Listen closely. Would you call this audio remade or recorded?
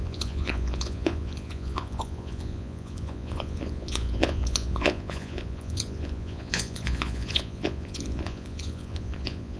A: remade